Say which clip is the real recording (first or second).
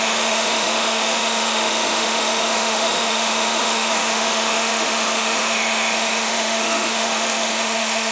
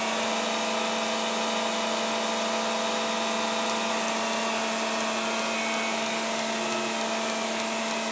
second